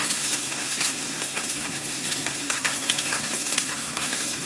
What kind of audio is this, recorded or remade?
remade